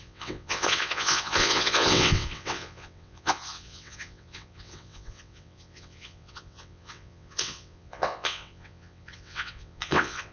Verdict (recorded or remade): remade